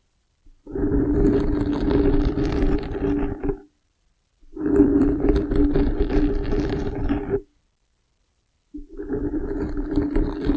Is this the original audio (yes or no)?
no